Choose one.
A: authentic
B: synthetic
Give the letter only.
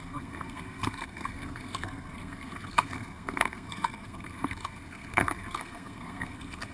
B